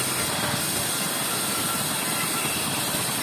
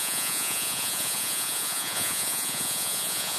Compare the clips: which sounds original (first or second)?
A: first